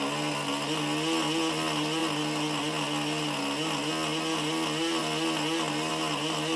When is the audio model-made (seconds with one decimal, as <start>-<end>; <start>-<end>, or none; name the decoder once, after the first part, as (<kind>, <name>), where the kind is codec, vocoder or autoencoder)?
none